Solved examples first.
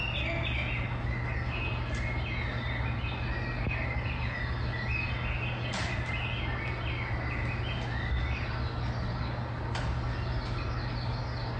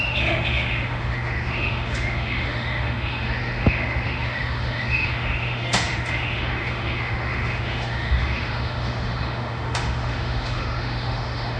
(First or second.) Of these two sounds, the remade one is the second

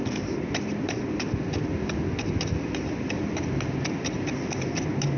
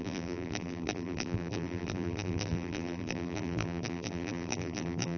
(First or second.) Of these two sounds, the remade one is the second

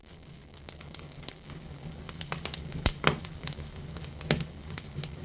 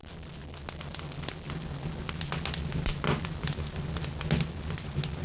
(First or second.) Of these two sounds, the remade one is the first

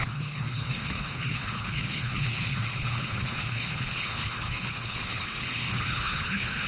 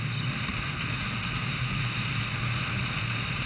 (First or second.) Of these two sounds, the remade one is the first